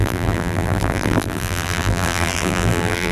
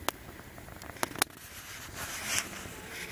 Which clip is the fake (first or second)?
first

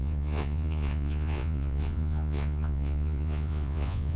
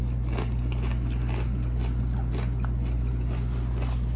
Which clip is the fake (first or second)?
first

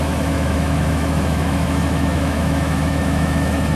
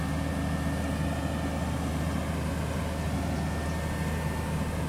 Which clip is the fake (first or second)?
first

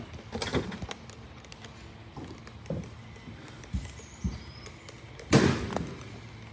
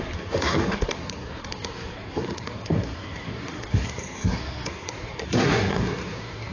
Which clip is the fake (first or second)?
second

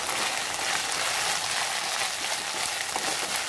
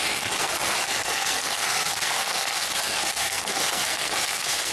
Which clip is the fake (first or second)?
second